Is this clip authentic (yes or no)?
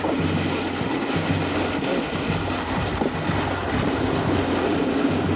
yes